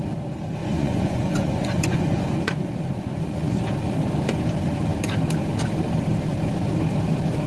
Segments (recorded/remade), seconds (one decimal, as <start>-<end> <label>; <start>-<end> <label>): 0.0-0.6 recorded; 0.6-3.6 remade; 3.6-7.5 recorded